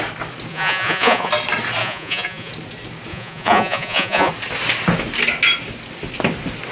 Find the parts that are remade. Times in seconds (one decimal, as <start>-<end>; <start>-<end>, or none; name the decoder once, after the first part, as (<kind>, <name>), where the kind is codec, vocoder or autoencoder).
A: 0.5-1.3 (vocoder, Vocos); 1.8-2.5; 3.1-4.3